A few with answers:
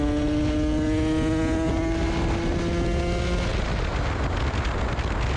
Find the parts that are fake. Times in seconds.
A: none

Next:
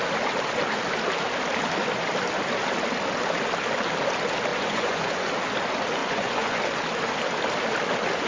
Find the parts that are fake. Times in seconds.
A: 4.5-5.3 (vocoder, Vocos); 6.0-6.6

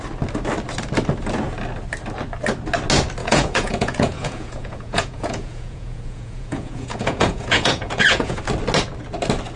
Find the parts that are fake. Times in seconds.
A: 3.2-8.4 (vocoder, Vocos)

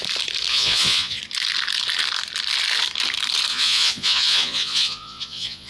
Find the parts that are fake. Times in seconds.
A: 0.5-1.2 (vocoder, Vocos); 3.5-5.7